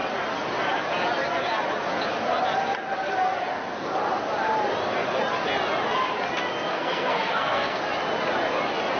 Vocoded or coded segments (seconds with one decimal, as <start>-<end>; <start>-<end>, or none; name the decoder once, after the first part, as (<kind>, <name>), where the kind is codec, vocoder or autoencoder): 6.7-7.8 (codec, SNAC)